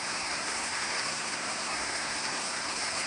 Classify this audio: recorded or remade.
remade